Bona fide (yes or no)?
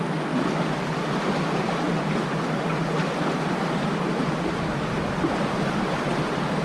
yes